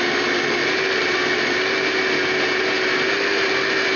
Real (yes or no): yes